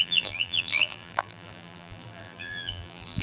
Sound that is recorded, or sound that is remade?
remade